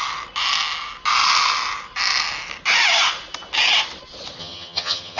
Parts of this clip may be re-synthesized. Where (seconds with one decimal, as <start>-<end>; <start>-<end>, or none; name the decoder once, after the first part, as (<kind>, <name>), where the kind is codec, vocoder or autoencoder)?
4.4-5.2 (vocoder, HiFi-GAN)